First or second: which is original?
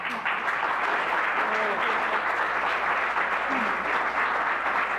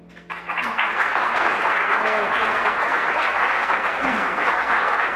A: first